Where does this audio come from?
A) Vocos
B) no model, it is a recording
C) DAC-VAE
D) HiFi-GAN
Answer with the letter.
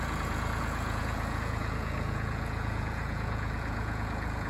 A